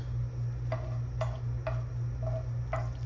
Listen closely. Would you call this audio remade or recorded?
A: recorded